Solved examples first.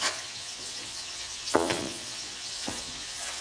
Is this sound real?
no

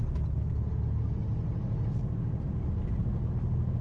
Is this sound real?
yes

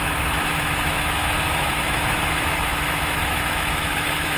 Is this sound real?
no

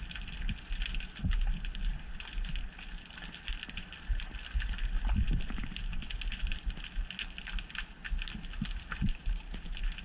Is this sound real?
yes